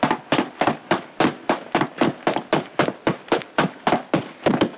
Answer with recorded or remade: recorded